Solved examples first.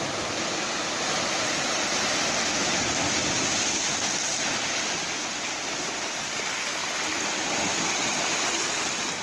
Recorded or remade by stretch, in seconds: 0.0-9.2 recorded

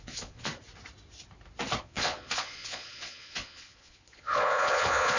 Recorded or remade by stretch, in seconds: 0.0-0.5 remade; 0.5-1.8 recorded; 1.8-5.2 remade

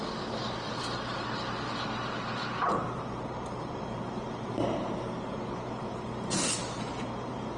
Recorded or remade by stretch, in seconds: 0.0-2.7 recorded; 2.7-6.6 remade; 6.6-7.6 recorded